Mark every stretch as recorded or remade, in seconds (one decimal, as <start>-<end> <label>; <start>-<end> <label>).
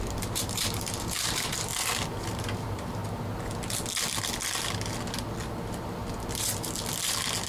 0.0-1.7 remade; 1.7-2.3 recorded; 2.3-3.0 remade; 3.0-7.5 recorded